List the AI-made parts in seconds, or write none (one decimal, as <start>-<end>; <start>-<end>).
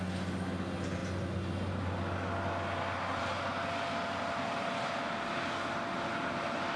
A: none